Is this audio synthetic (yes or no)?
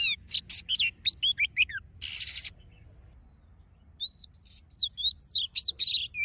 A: no